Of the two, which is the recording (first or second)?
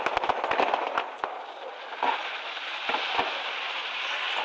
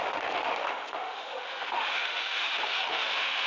first